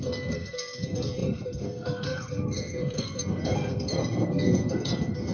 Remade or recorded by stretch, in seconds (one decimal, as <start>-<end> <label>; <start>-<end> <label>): 0.0-5.3 remade